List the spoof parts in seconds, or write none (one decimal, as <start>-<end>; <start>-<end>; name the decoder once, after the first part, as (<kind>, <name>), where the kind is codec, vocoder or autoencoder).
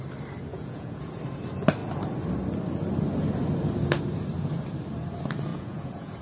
0.5-1.2 (vocoder, Vocos); 5.5-6.2